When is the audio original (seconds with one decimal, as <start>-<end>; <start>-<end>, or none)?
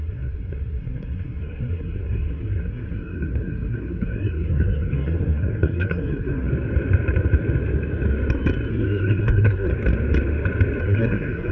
6.5-8.7; 9.7-10.8